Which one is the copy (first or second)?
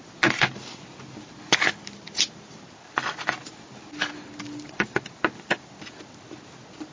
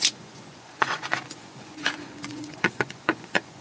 second